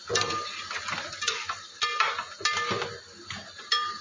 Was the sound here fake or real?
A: real